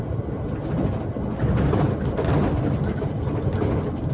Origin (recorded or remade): recorded